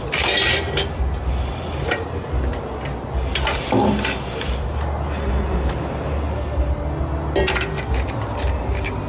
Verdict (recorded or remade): recorded